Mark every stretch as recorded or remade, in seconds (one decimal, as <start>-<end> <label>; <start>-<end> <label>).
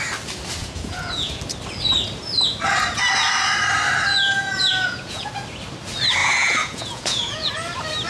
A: 0.0-0.6 recorded; 0.6-1.4 remade; 1.4-4.1 recorded; 4.1-5.3 remade; 5.3-6.2 recorded; 6.2-7.5 remade; 7.5-8.1 recorded